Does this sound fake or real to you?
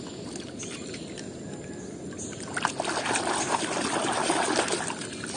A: real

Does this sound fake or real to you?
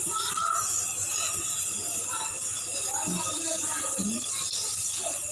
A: real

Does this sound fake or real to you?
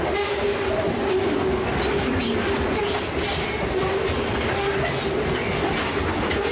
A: real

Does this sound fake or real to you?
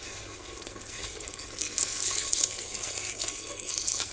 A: fake